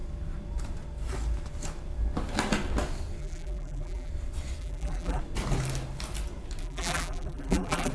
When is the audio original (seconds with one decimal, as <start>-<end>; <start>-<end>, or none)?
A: 0.0-3.2; 4.1-4.6; 5.2-6.6